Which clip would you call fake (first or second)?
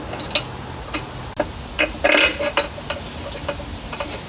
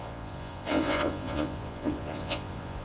second